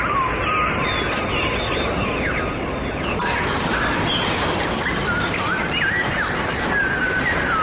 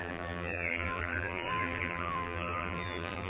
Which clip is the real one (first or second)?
first